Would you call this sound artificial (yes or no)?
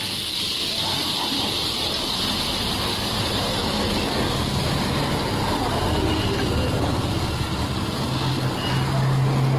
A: no